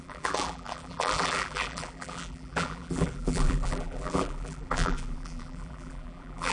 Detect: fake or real fake